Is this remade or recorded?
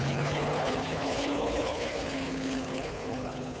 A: remade